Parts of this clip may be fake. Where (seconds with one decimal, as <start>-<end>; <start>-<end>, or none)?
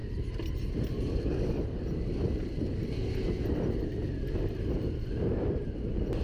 none